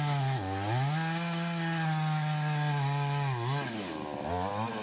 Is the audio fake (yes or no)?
no